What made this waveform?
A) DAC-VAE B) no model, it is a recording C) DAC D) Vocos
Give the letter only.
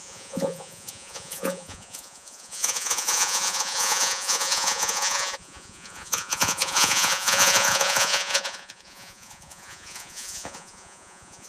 D